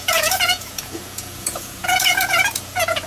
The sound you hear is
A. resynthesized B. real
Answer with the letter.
A